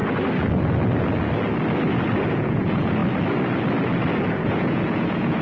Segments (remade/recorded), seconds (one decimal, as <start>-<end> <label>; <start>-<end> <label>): 0.0-2.3 recorded; 2.3-3.0 remade; 3.0-4.3 recorded; 4.3-5.4 remade

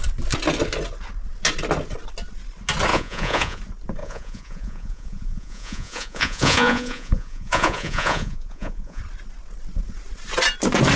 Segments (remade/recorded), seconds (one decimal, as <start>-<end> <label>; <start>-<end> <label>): 0.0-2.9 recorded; 2.9-3.6 remade; 3.6-4.0 recorded; 4.0-9.0 remade; 9.0-11.0 recorded

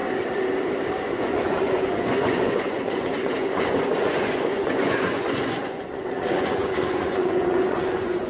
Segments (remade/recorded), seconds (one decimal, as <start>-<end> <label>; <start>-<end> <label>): 0.0-1.0 recorded; 1.0-8.3 remade

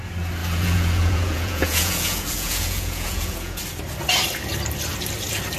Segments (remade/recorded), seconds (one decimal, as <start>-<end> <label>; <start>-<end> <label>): 0.0-0.4 recorded; 0.4-3.6 remade; 3.6-5.6 recorded

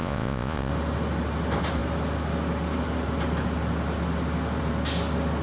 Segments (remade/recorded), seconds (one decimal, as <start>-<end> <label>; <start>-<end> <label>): 0.0-0.7 remade; 0.7-5.4 recorded

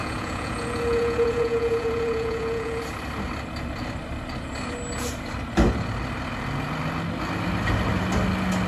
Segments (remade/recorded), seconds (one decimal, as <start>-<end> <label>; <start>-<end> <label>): 0.0-2.8 remade; 2.8-8.7 recorded

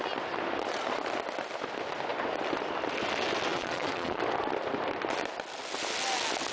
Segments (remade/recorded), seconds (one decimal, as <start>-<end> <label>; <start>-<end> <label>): 0.0-3.5 recorded; 3.5-4.2 remade; 4.2-6.5 recorded